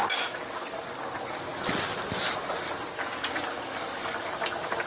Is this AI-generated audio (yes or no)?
no